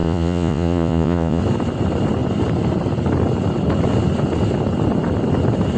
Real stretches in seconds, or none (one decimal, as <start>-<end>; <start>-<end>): 1.4-5.8